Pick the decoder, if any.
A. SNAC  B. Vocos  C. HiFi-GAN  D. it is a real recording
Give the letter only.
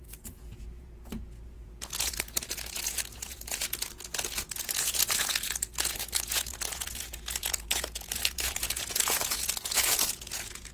B